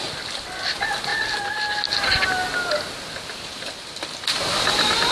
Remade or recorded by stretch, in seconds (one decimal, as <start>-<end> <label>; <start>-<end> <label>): 0.0-5.1 recorded